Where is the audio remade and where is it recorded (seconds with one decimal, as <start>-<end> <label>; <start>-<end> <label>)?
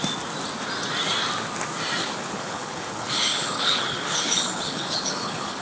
0.0-2.0 recorded; 2.0-5.6 remade